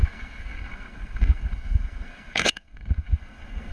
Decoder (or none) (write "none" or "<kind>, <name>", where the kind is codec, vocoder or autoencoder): codec, SNAC